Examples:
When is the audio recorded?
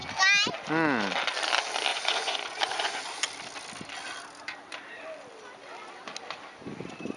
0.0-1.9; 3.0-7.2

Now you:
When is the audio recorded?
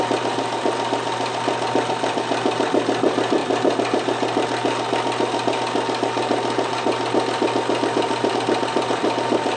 0.0-9.6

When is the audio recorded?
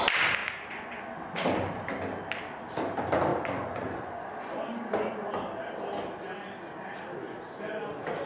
0.0-0.4; 1.0-3.3; 4.3-8.3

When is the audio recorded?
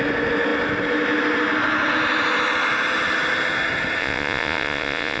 0.0-4.0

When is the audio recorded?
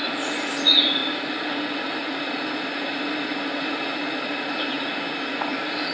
none